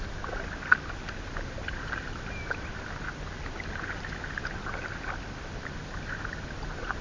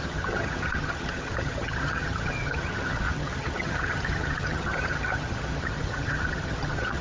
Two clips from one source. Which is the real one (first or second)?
first